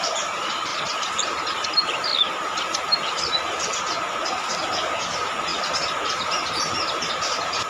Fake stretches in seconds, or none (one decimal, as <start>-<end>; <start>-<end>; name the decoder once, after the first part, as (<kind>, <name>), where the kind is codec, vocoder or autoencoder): 0.0-0.7 (vocoder, BigVGAN v2); 1.7-2.1; 5.0-5.5; 7.1-7.7

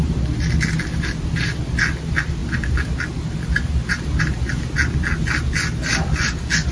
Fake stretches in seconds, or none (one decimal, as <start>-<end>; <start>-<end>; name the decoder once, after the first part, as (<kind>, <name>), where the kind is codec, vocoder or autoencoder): none

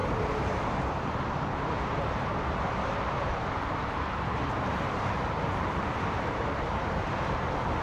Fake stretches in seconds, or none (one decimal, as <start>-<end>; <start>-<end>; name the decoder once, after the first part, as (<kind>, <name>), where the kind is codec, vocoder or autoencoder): 0.0-7.8 (vocoder, BigVGAN v2)

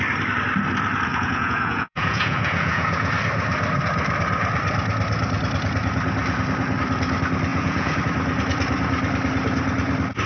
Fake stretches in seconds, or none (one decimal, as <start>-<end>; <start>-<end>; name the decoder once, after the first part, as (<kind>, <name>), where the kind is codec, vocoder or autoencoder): 1.1-3.1 (vocoder, Vocos); 7.5-8.0

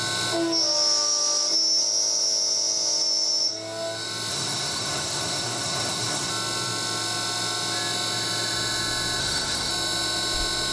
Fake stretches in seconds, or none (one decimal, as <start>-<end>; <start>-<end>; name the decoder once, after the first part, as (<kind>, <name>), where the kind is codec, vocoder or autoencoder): 4.3-6.3 (codec, SNAC); 9.2-9.7

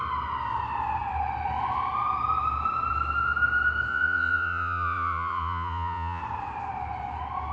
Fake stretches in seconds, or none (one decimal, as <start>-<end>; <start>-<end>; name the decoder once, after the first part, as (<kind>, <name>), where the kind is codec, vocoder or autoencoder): 3.9-6.2 (vocoder, Vocos)